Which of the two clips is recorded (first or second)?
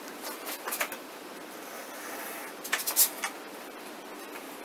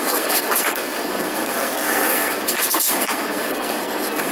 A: first